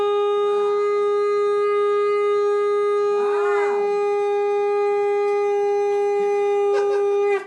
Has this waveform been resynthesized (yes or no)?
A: no